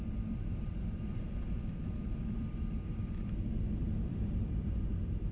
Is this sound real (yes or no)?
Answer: no